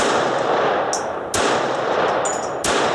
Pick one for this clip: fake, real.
real